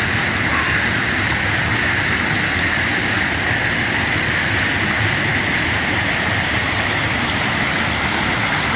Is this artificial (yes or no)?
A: no